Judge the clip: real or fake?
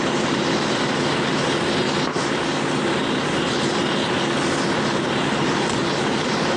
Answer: real